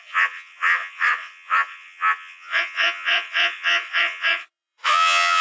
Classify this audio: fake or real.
fake